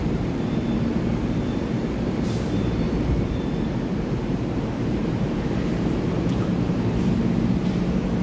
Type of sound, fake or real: fake